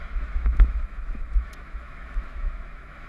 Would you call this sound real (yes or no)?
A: no